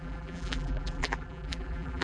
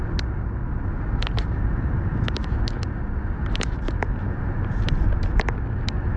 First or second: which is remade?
first